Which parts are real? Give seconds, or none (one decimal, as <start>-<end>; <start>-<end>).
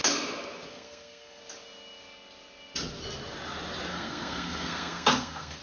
0.0-0.7; 1.4-3.9